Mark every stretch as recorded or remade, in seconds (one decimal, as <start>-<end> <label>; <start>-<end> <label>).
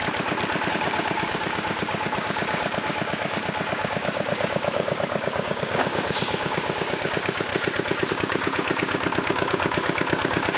0.0-0.7 recorded; 0.7-7.5 remade; 7.5-8.1 recorded; 8.1-10.6 remade